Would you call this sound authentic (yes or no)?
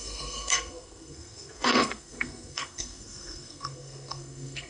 no